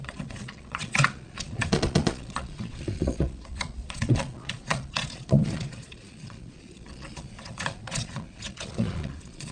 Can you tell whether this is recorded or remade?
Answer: remade